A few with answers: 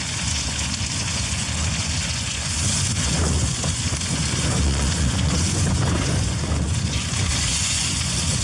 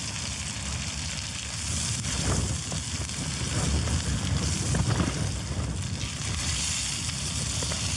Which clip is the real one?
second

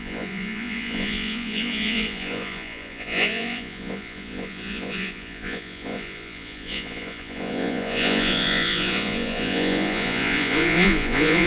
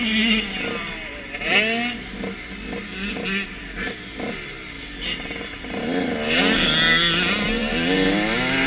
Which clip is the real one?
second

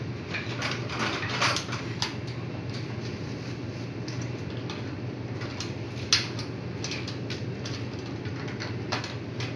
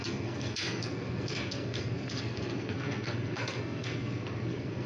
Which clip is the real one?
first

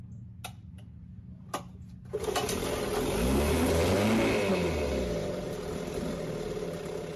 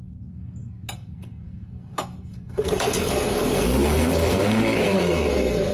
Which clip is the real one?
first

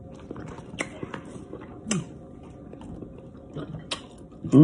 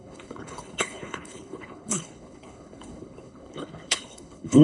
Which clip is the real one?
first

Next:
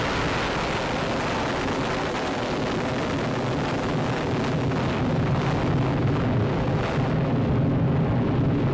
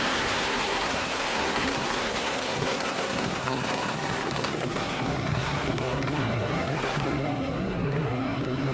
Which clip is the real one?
first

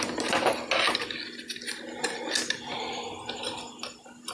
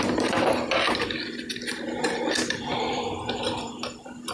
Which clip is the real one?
first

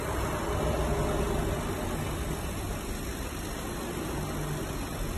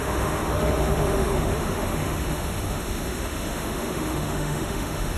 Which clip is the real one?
first